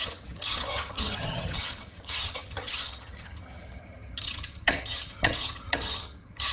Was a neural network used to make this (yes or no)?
yes